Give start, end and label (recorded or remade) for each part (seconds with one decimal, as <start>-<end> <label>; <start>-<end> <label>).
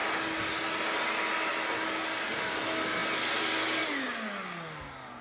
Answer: 0.0-5.2 recorded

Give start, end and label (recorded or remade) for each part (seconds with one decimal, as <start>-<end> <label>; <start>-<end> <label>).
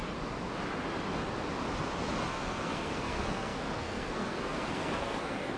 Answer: 0.0-2.3 recorded; 2.3-5.6 remade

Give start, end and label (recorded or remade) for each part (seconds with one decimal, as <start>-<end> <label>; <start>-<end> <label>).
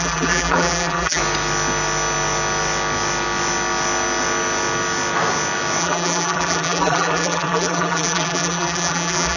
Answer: 0.0-1.2 remade; 1.2-5.8 recorded; 5.8-9.4 remade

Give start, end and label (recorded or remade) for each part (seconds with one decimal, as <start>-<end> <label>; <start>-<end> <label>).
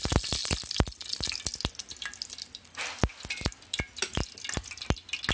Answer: 0.0-5.3 recorded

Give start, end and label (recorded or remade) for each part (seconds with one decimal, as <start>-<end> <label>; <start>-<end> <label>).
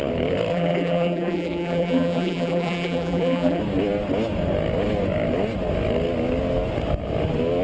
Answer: 0.0-0.5 recorded; 0.5-3.6 remade; 3.6-7.6 recorded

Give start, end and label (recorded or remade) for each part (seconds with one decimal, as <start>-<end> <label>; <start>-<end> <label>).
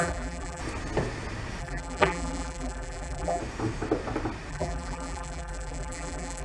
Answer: 0.0-0.6 remade; 0.6-1.6 recorded; 1.6-3.4 remade; 3.4-4.5 recorded; 4.5-6.4 remade